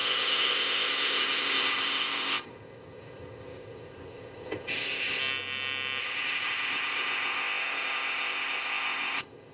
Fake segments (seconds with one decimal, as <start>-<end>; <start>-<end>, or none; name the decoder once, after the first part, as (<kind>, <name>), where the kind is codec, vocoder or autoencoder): 0.0-5.2 (codec, ZipCodec); 6.0-9.5